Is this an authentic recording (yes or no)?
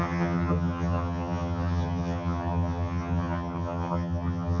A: no